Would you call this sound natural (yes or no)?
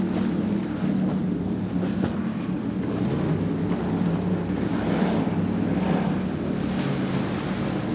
yes